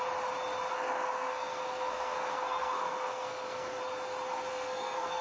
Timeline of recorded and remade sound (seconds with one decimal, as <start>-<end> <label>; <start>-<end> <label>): 0.0-0.7 recorded; 0.7-3.8 remade; 3.8-4.5 recorded; 4.5-5.2 remade